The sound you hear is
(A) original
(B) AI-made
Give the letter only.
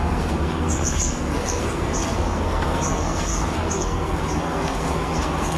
B